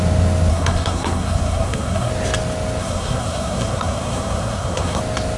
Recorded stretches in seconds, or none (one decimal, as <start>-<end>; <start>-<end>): 0.0-0.5; 2.1-2.8; 5.0-5.4